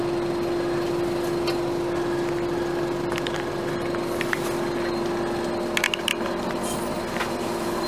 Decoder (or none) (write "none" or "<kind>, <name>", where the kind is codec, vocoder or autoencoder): none